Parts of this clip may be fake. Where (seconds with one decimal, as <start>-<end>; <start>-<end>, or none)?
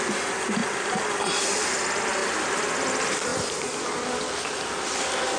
none